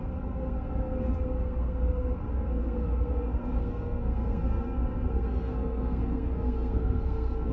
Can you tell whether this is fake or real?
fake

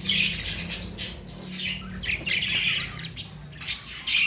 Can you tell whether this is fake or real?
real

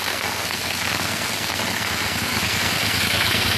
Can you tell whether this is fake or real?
fake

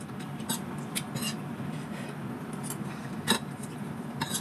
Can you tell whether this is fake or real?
real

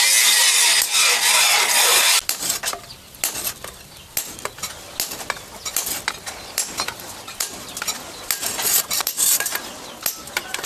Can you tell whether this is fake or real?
real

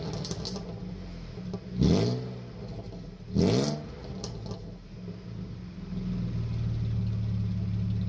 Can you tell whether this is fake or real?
real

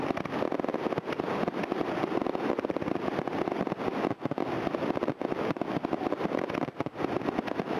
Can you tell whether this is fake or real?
real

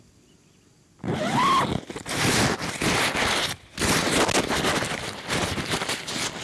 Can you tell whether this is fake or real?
real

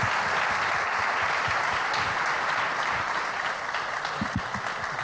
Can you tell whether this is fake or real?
real